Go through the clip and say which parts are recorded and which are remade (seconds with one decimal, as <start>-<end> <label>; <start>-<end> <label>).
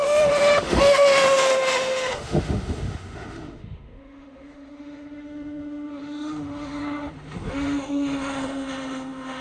0.0-9.4 remade